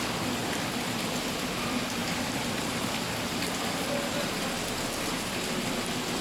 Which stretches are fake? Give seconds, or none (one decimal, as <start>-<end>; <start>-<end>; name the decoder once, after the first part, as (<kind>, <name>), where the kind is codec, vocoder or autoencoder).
0.4-1.6 (vocoder, BigVGAN v2); 2.0-5.7